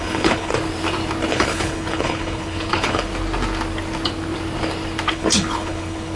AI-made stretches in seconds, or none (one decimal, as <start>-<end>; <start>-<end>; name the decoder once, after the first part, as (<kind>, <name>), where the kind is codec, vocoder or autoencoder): 0.0-0.5 (codec, HILCodec); 1.3-3.1; 5.1-6.2